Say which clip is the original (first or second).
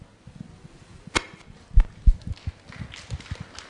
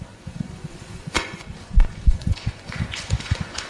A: first